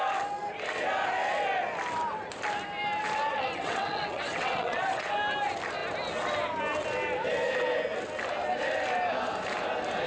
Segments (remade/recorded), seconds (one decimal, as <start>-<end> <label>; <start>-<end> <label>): 0.0-3.3 recorded; 3.3-5.1 remade; 5.1-10.1 recorded